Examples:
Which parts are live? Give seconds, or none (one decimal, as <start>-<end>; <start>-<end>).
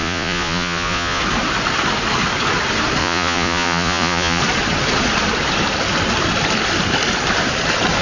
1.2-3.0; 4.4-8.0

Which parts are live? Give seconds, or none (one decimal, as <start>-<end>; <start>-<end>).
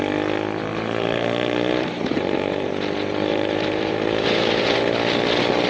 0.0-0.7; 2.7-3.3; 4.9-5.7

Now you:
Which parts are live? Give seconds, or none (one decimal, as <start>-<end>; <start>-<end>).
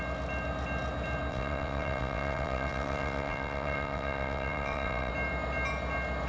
0.0-1.3; 5.1-6.3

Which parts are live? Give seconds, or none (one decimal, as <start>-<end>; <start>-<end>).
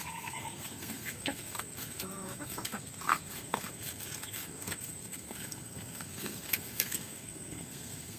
none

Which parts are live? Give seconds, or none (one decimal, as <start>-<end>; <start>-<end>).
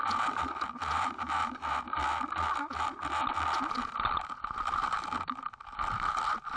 0.0-6.6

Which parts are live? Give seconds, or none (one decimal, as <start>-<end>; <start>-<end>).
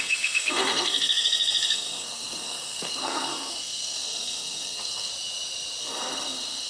5.1-5.8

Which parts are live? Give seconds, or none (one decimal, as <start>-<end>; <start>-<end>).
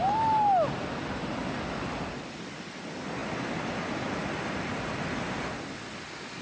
0.0-6.4